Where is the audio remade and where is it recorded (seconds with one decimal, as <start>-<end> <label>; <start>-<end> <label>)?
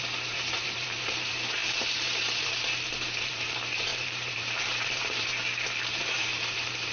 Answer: 0.0-5.3 remade; 5.3-5.8 recorded; 5.8-6.9 remade